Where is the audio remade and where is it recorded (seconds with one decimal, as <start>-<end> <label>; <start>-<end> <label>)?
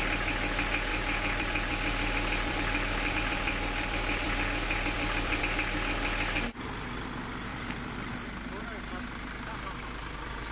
0.0-0.9 recorded; 0.9-5.4 remade; 5.4-7.5 recorded; 7.5-8.1 remade; 8.1-10.5 recorded